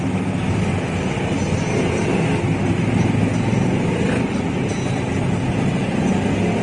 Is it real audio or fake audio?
real